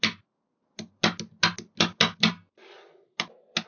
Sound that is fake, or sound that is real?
real